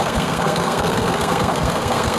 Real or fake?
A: fake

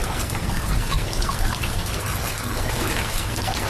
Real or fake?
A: fake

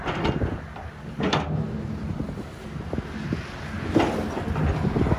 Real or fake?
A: real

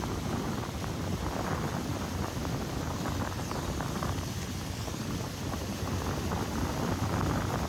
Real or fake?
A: real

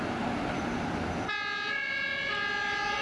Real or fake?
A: real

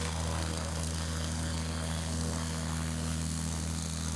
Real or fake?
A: fake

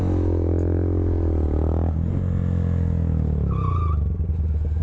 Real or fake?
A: real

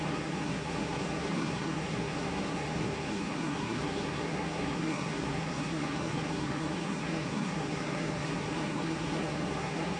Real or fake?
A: fake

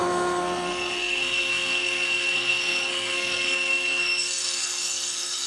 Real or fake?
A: fake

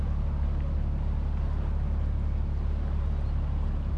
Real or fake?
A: real